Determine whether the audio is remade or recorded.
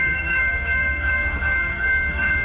remade